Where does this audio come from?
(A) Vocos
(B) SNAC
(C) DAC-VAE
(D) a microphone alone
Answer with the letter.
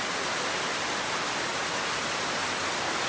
D